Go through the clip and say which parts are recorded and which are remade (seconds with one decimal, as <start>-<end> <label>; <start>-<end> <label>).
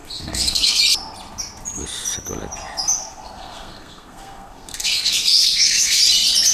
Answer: 0.0-0.8 remade; 0.8-3.0 recorded; 3.0-6.0 remade; 6.0-6.5 recorded